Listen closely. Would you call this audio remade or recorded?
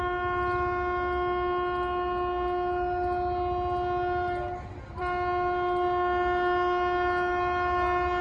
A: recorded